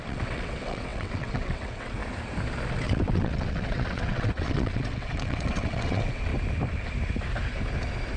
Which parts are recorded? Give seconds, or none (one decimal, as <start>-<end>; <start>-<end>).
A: 2.0-2.7; 6.3-8.2